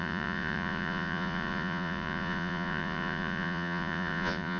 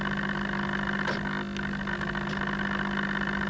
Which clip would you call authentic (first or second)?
second